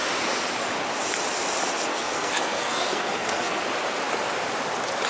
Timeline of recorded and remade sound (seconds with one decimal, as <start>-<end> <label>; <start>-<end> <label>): 0.0-1.9 recorded; 1.9-3.6 remade; 3.6-5.1 recorded